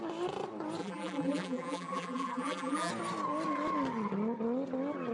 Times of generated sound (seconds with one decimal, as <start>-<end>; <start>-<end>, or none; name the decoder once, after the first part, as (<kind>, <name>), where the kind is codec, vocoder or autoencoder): 0.8-2.9 (vocoder, BigVGAN v2)